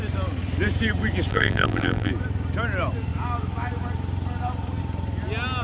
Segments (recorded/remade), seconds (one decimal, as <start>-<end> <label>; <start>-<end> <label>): 0.0-1.3 recorded; 1.3-2.1 remade; 2.1-5.6 recorded